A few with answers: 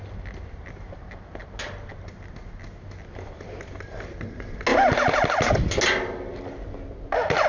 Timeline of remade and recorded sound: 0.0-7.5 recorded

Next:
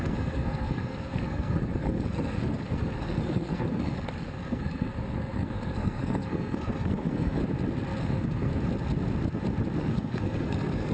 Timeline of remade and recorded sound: 0.0-7.4 remade; 7.4-8.0 recorded; 8.0-8.5 remade; 8.5-9.8 recorded; 9.8-10.9 remade

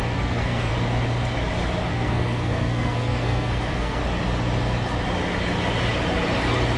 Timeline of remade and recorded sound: 0.0-0.7 remade; 0.7-1.9 recorded; 1.9-4.0 remade; 4.0-6.8 recorded

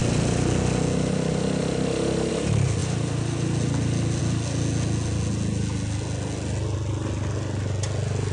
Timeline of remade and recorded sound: 0.0-8.3 recorded

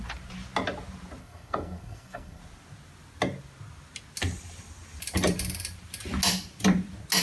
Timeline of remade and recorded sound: 0.0-1.2 recorded; 1.2-2.4 remade; 2.4-7.2 recorded